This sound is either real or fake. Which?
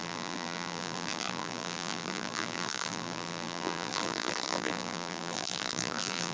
fake